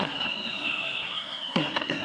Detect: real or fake fake